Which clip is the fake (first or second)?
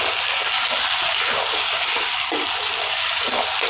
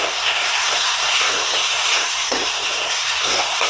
second